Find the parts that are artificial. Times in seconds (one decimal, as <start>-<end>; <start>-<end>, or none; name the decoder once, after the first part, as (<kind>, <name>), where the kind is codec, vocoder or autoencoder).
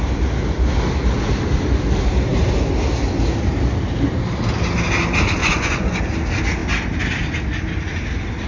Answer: 5.4-6.0 (vocoder, Vocos)